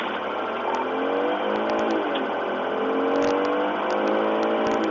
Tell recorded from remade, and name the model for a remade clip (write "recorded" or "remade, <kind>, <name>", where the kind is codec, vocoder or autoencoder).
recorded